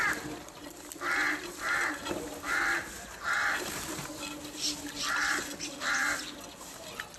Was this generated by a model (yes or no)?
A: no